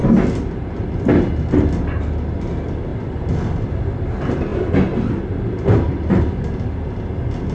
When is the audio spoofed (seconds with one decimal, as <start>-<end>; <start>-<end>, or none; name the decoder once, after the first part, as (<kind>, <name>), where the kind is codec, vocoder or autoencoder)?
0.0-1.0 (vocoder, BigVGAN v2); 2.9-4.1; 4.5-5.9